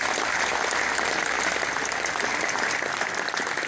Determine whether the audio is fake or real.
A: real